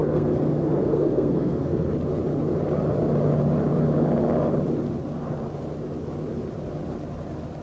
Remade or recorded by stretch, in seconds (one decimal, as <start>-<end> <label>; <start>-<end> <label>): 0.0-1.9 remade; 1.9-7.6 recorded